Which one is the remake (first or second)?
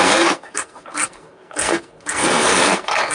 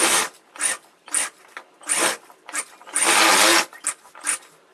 first